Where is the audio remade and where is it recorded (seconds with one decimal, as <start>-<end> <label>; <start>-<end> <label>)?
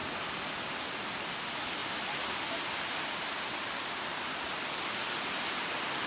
0.0-1.1 remade; 1.1-1.8 recorded; 1.8-4.2 remade; 4.2-6.1 recorded